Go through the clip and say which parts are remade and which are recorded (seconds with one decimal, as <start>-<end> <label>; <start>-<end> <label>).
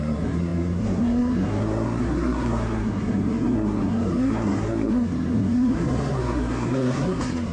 0.0-7.5 remade